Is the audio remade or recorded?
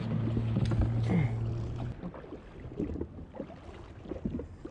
recorded